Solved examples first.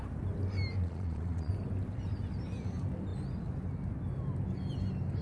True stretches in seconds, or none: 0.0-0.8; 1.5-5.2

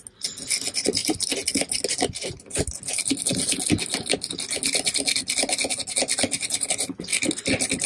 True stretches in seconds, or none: 0.0-7.9

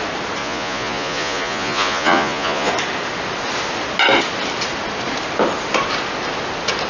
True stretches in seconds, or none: 0.0-0.4; 2.7-6.9

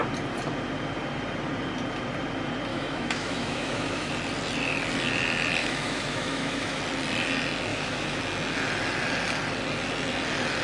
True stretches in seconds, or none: 0.0-2.7; 4.1-5.6; 6.8-7.7; 8.2-10.6

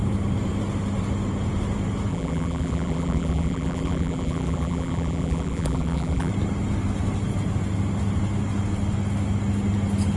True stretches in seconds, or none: 0.0-2.1; 6.3-10.2

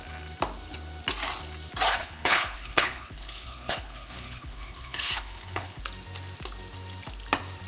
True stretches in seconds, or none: 0.0-2.0; 5.8-7.7

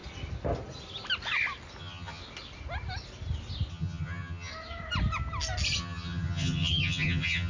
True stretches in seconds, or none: 0.0-1.8; 2.2-3.7; 4.5-5.8

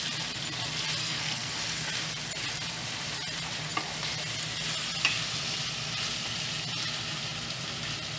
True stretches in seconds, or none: 0.0-1.0; 1.5-8.2